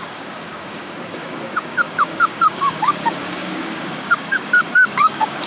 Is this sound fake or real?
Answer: fake